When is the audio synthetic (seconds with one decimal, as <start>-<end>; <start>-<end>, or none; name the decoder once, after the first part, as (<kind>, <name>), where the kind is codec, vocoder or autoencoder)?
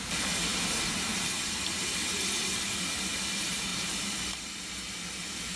3.7-4.4 (vocoder, BigVGAN v2)